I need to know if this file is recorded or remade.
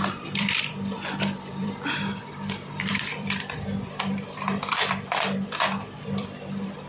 remade